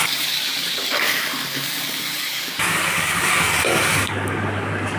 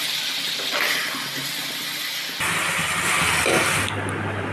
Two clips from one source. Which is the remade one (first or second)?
first